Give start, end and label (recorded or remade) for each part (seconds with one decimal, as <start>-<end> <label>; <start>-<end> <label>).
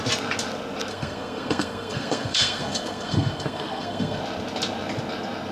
0.0-0.9 recorded; 0.9-4.2 remade; 4.2-5.5 recorded